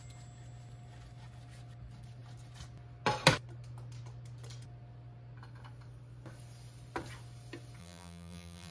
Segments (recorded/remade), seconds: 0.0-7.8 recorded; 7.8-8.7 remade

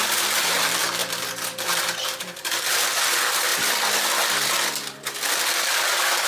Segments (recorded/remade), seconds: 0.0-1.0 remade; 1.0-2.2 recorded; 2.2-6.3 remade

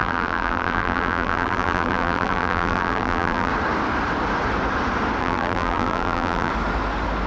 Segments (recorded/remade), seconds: 0.0-3.5 remade; 3.5-5.2 recorded; 5.2-6.5 remade; 6.5-7.3 recorded